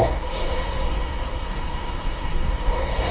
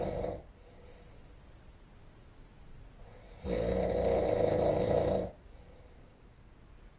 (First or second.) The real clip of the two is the second